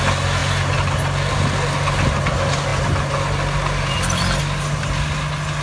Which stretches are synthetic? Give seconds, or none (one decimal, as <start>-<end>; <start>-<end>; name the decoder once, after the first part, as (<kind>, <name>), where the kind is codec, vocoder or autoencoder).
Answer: none